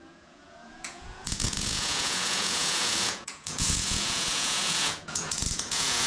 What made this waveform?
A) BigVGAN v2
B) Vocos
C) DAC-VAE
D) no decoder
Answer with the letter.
B